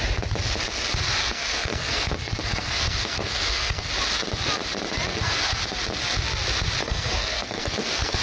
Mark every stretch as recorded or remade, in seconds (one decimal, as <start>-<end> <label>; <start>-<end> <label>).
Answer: 0.0-1.2 recorded; 1.2-3.9 remade; 3.9-5.1 recorded; 5.1-5.6 remade; 5.6-6.8 recorded; 6.8-8.2 remade